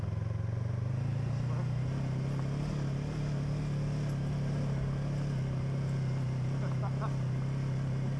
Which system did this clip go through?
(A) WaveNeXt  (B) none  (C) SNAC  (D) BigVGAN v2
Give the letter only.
B